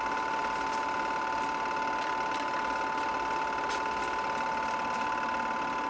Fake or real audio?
real